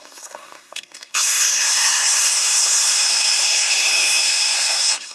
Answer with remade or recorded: remade